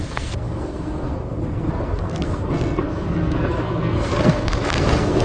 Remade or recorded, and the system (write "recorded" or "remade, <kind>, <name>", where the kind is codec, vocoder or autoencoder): remade, codec, SNAC